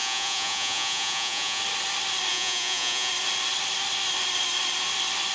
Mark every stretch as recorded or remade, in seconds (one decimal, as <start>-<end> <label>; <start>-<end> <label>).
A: 0.0-1.6 remade; 1.6-2.3 recorded; 2.3-3.1 remade; 3.1-5.3 recorded